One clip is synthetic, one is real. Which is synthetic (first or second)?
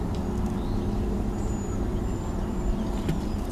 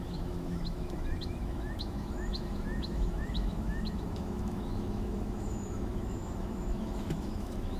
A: second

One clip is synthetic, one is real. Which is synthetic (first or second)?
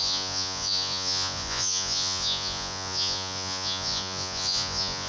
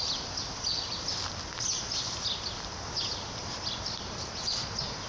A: first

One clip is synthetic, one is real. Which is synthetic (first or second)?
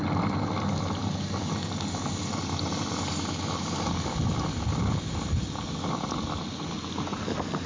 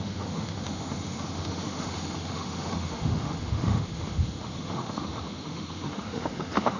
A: second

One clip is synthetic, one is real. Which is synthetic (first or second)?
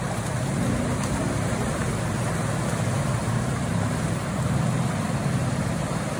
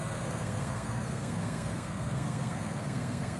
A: second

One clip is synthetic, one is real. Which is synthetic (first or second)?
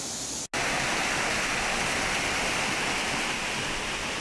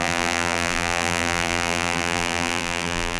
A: second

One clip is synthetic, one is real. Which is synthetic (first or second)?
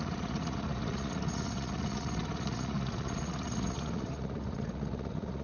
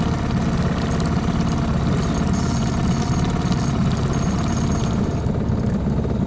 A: first